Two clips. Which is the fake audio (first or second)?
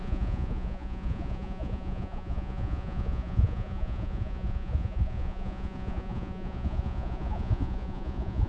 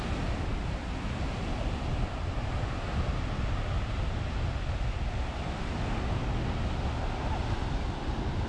first